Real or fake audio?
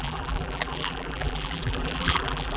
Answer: fake